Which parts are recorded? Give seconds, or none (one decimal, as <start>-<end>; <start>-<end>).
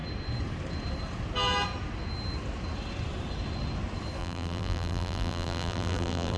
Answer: 0.0-4.2